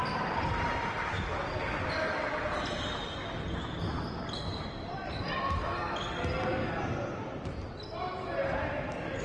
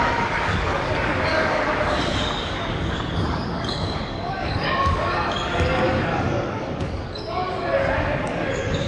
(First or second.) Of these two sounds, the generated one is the second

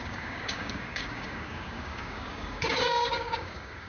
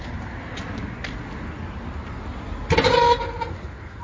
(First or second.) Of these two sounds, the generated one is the first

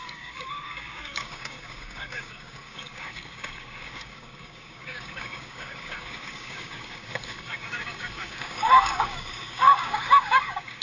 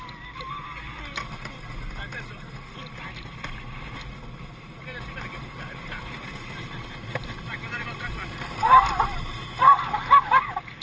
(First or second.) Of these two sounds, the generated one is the first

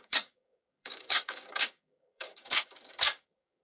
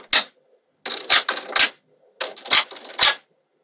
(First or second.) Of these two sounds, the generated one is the first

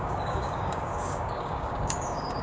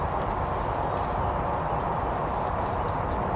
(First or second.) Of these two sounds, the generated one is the first